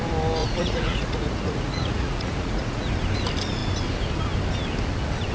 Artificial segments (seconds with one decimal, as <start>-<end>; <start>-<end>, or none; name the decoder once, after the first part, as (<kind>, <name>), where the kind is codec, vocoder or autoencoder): 0.4-2.9 (vocoder, Vocos)